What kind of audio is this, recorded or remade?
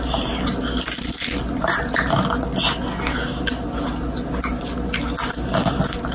recorded